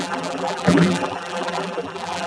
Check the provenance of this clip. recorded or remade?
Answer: remade